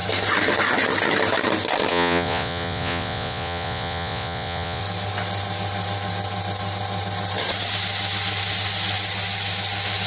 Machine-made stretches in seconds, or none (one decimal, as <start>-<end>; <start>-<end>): 1.9-4.8